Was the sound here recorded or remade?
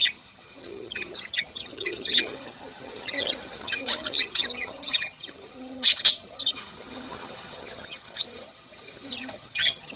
remade